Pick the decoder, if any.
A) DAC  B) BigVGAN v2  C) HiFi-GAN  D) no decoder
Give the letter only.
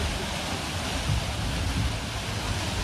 D